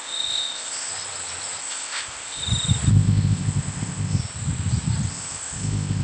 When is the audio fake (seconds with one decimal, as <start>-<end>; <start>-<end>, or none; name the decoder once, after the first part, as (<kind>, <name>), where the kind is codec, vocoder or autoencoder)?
0.0-0.9 (codec, ZipCodec); 1.6-2.4; 2.9-4.2; 5.1-6.0